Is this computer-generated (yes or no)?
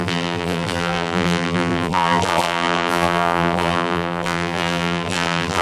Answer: yes